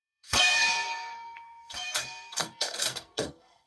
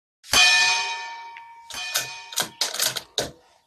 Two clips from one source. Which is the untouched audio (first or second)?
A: second